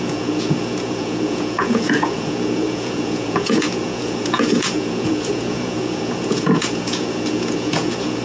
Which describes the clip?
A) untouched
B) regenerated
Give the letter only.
B